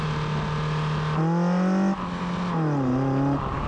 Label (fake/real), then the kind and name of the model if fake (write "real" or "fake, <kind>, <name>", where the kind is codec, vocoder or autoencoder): real